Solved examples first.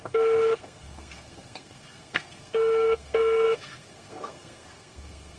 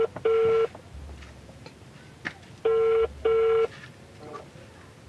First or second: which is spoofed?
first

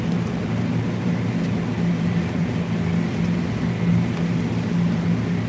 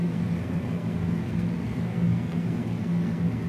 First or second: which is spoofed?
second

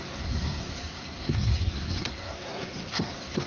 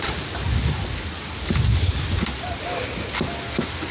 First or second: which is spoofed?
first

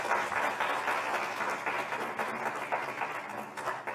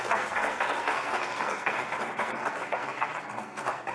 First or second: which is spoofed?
second